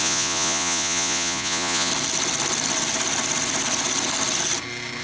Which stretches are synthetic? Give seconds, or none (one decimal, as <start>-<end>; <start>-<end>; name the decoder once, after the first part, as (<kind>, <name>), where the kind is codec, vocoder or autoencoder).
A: 0.0-1.9 (vocoder, Vocos)